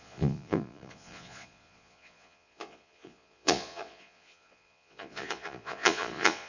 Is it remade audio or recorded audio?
remade